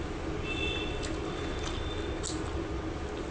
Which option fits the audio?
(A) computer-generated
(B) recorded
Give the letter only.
B